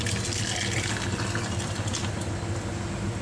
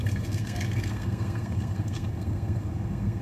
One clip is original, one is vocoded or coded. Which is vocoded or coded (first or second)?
second